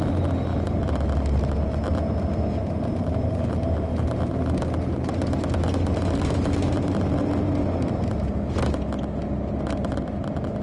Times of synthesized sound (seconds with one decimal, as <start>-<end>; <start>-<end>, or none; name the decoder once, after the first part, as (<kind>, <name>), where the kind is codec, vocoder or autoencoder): none